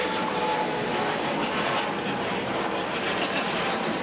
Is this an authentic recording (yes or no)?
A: yes